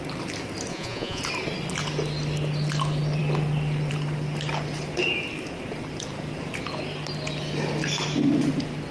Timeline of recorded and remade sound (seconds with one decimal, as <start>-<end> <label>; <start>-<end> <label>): 0.0-0.7 recorded; 0.7-1.2 remade; 1.2-8.9 recorded